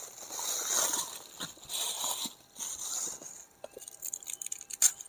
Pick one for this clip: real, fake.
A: real